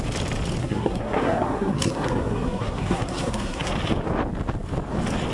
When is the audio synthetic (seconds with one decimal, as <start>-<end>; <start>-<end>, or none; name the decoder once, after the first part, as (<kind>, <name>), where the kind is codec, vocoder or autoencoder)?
0.6-3.7 (codec, SNAC)